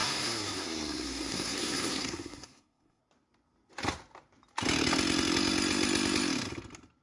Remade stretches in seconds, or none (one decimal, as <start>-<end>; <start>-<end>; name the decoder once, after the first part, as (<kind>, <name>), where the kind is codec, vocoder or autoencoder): 0.0-3.0 (codec, SNAC)